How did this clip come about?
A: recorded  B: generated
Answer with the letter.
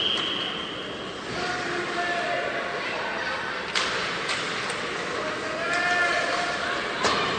A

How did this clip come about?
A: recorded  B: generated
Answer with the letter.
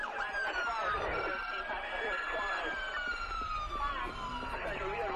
B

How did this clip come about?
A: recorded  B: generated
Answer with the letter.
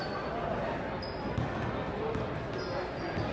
A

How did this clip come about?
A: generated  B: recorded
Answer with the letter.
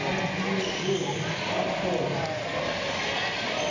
B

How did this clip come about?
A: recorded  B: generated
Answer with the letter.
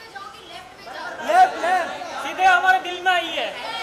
B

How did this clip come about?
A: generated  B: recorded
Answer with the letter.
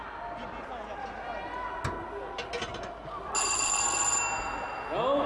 B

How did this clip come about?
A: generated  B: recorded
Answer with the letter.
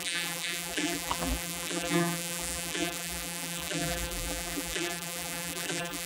A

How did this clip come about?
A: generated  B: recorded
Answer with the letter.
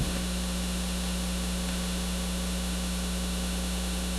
A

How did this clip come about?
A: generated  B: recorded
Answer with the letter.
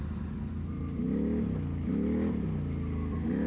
B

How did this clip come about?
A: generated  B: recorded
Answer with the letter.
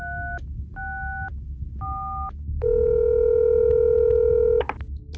B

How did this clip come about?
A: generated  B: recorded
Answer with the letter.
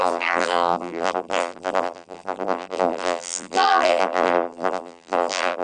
A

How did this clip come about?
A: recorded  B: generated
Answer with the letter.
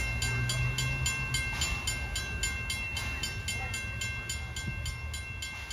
A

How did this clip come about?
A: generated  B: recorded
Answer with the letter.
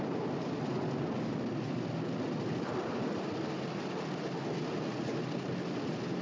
B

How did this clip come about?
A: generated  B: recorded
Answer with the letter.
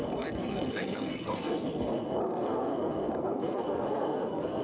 A